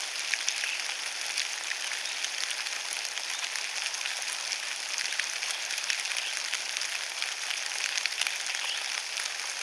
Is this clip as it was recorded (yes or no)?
yes